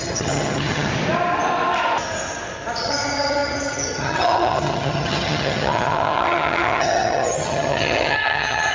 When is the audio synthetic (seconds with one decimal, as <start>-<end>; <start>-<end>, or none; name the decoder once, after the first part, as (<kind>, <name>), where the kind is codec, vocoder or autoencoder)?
0.0-0.9 (vocoder, HiFi-GAN); 2.8-8.7